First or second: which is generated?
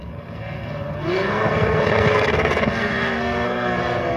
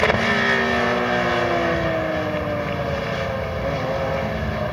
first